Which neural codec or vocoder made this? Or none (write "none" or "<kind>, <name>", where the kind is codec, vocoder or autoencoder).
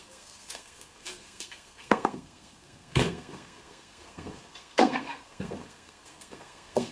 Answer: codec, SNAC